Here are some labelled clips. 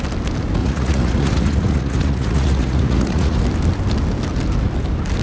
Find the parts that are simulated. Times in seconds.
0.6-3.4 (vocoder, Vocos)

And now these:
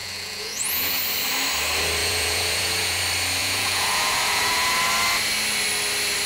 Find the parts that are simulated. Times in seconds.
0.0-1.0 (vocoder, Vocos); 2.0-3.0; 3.4-4.8